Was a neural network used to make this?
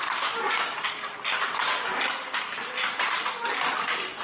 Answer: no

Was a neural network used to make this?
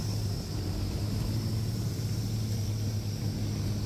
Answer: no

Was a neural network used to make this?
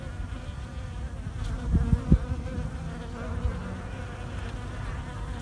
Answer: no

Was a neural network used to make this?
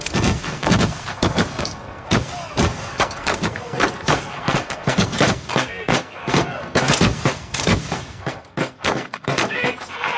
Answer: yes